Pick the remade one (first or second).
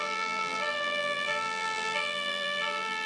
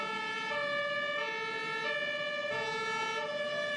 first